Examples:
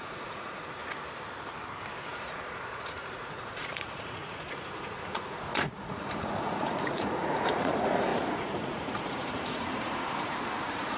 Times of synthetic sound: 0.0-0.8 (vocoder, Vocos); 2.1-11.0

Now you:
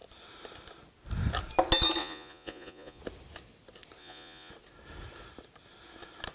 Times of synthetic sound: 2.0-3.0 (vocoder, Vocos); 4.0-4.5

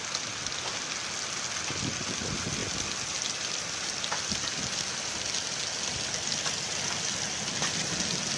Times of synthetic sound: none

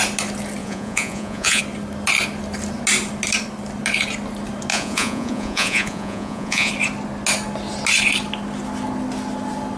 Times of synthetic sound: 0.6-1.6 (vocoder, Vocos); 4.7-6.7

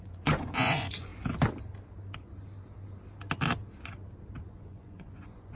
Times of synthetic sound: 0.0-1.1 (vocoder, Vocos); 4.5-5.6

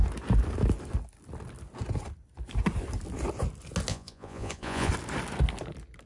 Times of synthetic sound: 3.9-4.9 (vocoder, Vocos)